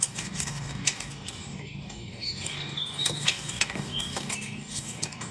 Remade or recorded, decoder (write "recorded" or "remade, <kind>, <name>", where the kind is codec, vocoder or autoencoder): remade, codec, DAC